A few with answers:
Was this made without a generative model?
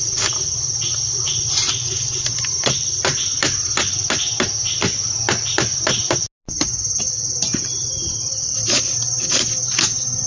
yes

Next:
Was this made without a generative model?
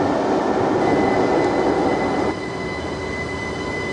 yes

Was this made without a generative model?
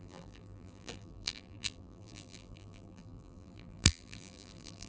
no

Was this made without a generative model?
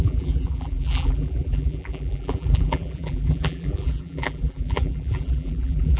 no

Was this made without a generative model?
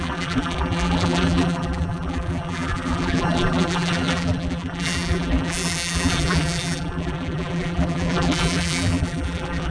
no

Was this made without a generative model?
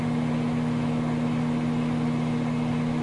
yes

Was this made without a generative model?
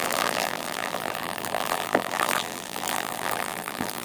no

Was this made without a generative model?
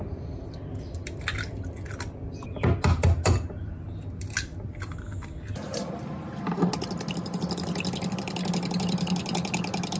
yes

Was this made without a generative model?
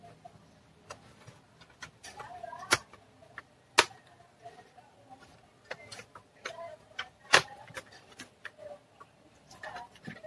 yes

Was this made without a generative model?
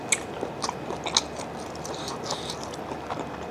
yes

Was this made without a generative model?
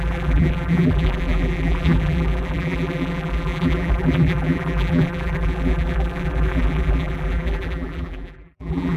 no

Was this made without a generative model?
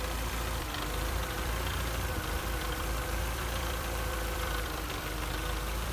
no